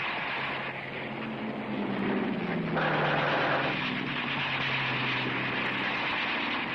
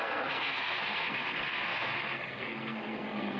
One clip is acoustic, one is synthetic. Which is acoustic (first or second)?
first